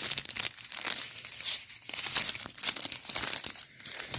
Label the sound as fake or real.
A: real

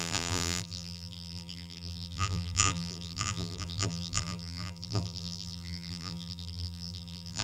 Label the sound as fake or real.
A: fake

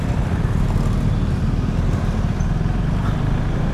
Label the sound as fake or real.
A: real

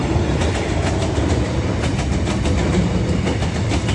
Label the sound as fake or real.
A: real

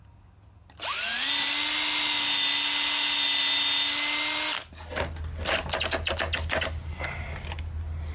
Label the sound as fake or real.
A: real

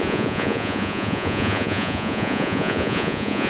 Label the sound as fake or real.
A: fake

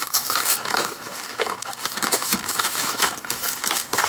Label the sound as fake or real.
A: fake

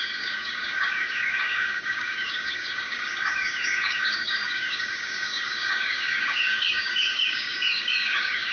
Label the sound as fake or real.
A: fake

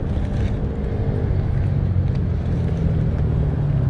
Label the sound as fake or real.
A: real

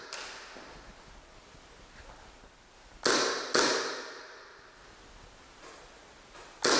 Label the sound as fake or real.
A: real